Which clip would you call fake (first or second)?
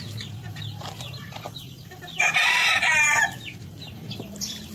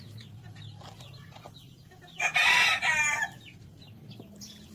first